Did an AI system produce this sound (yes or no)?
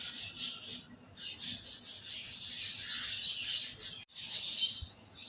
no